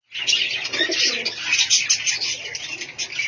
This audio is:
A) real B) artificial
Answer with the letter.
A